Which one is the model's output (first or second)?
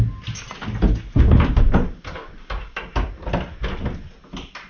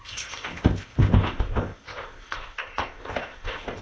second